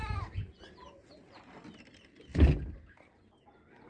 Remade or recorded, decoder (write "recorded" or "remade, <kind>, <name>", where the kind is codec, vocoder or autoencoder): recorded